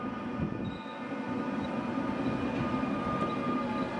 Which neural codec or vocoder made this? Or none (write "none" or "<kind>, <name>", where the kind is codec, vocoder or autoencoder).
none